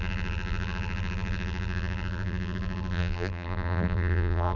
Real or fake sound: fake